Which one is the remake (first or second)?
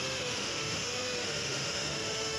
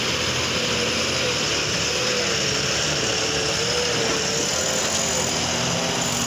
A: first